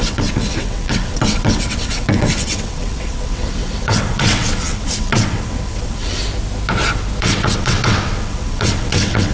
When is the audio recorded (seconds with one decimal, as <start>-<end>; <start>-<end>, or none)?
6.2-7.2